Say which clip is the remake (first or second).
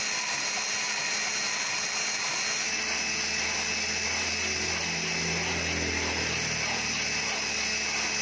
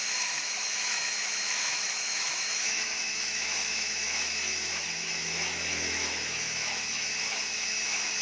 second